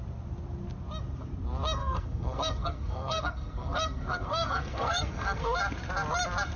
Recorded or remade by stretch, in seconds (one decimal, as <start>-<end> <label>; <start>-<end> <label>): 0.0-1.8 recorded; 1.8-5.6 remade; 5.6-6.6 recorded